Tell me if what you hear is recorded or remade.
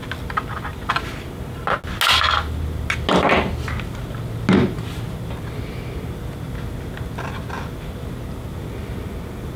recorded